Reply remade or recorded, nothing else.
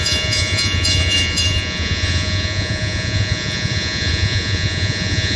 remade